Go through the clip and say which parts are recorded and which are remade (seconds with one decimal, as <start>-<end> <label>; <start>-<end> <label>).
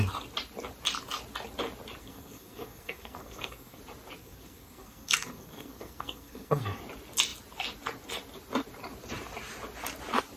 0.0-2.0 recorded; 2.0-3.8 remade; 3.8-4.2 recorded; 4.2-6.8 remade; 6.8-10.4 recorded